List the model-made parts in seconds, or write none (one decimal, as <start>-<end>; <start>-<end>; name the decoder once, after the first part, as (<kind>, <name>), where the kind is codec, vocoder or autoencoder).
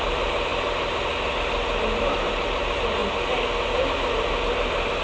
none